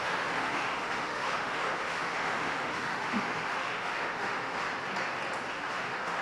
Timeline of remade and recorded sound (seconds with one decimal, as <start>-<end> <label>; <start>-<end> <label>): 0.0-4.7 remade; 4.7-5.5 recorded; 5.5-6.2 remade